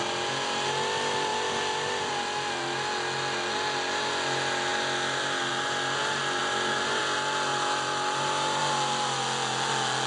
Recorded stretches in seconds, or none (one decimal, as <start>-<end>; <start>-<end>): 0.0-1.3; 2.1-6.4; 7.0-7.5; 8.6-10.1